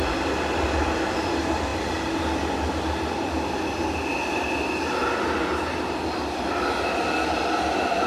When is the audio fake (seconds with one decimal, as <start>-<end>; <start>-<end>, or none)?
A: none